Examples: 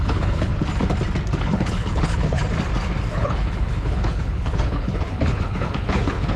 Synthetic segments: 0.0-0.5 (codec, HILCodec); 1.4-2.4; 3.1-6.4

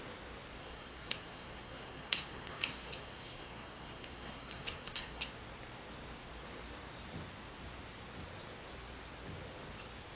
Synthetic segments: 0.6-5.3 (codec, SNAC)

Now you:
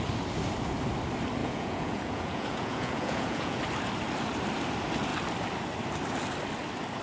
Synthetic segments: 1.4-3.6 (vocoder, Vocos)

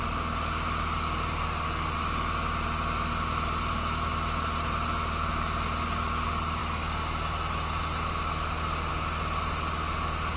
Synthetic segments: none

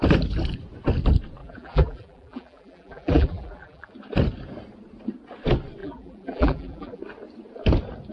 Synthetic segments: 1.4-3.9 (vocoder, BigVGAN v2); 5.8-7.0

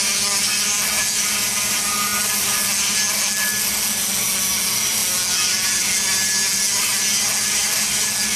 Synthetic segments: none

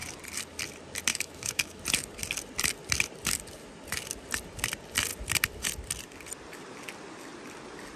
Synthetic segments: 1.1-1.8 (autoencoder, DAC-VAE)

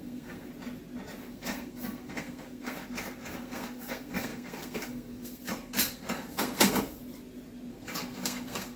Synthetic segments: 0.0-0.5 (codec, SNAC); 1.2-7.0; 7.7-8.8